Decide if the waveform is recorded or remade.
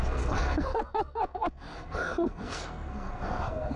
remade